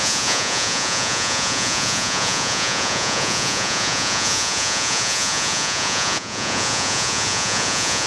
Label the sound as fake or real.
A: fake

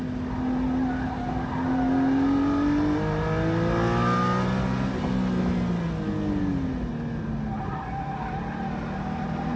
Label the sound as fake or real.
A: real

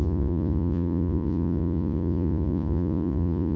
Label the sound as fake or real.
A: fake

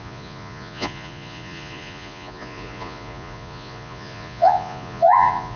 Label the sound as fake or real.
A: fake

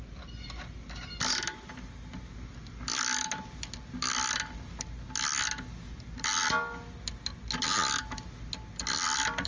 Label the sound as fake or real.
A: real